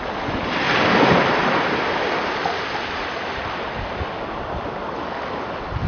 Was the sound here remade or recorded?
recorded